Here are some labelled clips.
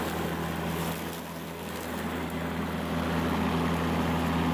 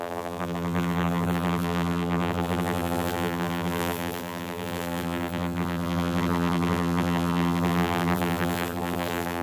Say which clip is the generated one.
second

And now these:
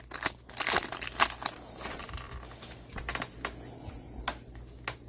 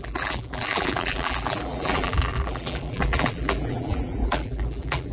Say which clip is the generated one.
second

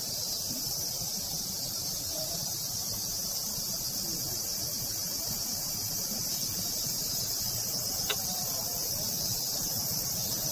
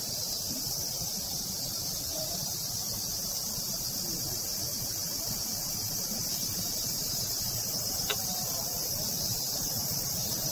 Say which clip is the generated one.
second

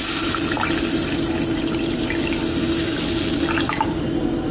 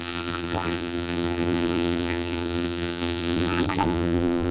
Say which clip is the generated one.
second